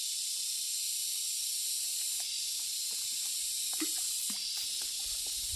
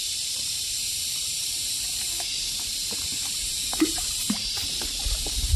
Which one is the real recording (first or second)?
first